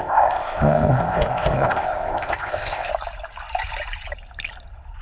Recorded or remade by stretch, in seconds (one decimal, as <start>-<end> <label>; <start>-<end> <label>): 0.0-2.9 remade; 2.9-5.0 recorded